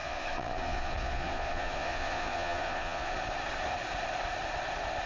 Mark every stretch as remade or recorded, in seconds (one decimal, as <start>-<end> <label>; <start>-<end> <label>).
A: 0.0-3.1 remade; 3.1-5.1 recorded